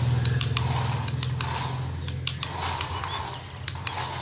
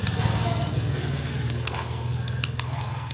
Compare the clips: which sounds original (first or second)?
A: first